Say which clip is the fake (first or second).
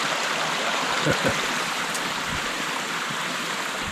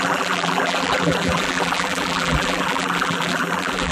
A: second